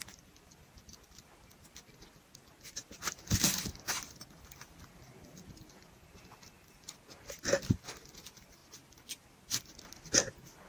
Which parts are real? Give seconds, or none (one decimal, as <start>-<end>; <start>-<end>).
0.0-10.7